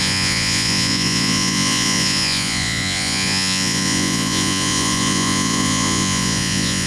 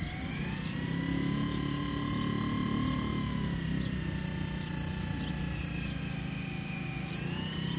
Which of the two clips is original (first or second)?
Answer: second